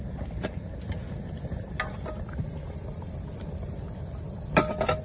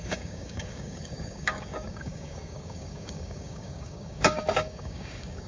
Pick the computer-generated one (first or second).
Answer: second